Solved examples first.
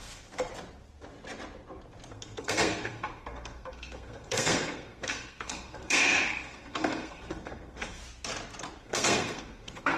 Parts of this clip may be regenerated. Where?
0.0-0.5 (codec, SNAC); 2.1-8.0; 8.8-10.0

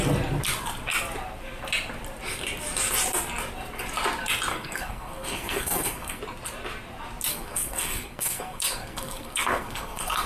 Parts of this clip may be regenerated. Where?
4.5-6.2 (codec, SNAC); 7.3-10.3

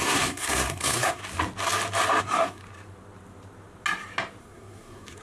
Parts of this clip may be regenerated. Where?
0.0-1.2 (codec, SNAC); 2.2-2.6; 4.4-5.2

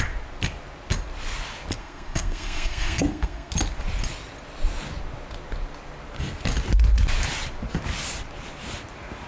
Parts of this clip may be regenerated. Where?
1.8-3.5 (codec, SNAC)

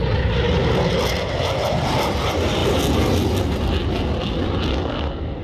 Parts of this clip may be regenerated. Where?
4.7-5.4 (codec, SNAC)